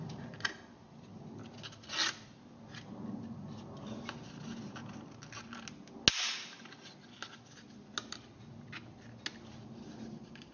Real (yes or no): yes